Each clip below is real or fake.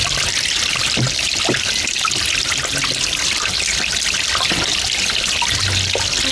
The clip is real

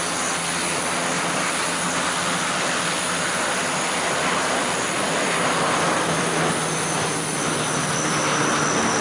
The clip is real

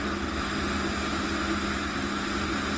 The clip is real